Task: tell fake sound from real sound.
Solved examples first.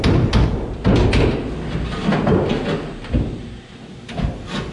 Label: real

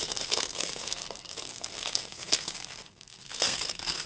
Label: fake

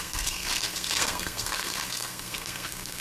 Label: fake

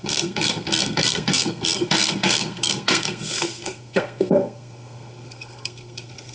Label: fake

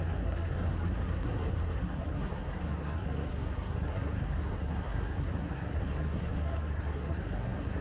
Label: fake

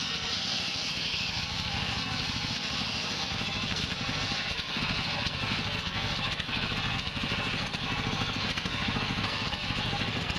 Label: fake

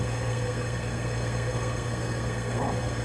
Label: fake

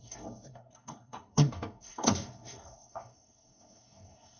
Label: fake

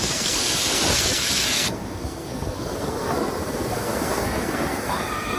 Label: fake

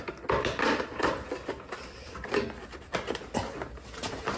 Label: real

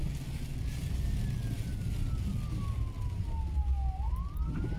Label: real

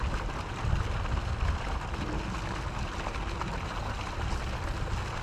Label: real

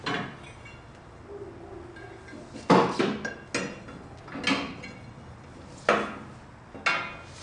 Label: real